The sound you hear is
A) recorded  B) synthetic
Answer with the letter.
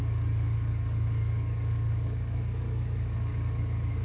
B